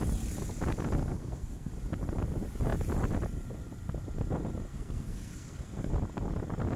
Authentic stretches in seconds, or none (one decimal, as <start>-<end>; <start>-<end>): 0.0-1.0; 1.7-4.7; 5.9-6.8